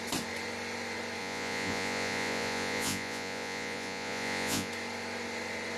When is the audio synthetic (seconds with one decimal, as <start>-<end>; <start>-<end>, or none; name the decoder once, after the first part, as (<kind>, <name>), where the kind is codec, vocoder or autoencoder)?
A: 1.2-4.7 (vocoder, Vocos)

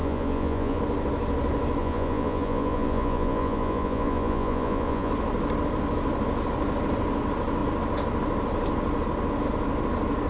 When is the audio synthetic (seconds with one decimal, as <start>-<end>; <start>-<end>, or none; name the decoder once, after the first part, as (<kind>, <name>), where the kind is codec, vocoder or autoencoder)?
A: 0.0-0.8 (vocoder, Vocos); 1.8-5.1

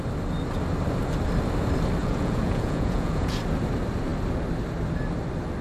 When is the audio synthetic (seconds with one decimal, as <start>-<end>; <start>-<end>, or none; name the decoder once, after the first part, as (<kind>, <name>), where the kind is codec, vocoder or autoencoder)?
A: 2.0-3.4 (vocoder, Vocos)

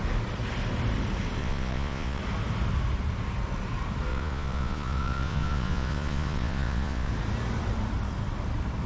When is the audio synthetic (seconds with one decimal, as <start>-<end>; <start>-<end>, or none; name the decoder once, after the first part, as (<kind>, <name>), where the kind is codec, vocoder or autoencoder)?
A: 1.4-2.2 (vocoder, Vocos); 4.1-7.1